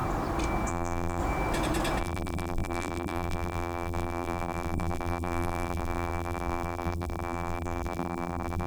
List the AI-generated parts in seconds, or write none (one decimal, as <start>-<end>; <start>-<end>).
0.7-1.2; 2.0-8.7